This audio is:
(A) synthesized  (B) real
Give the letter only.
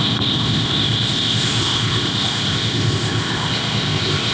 A